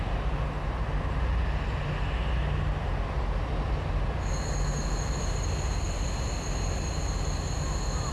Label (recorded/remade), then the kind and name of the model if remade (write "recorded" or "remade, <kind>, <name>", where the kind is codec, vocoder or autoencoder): recorded